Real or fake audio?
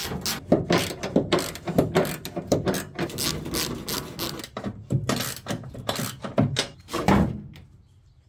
real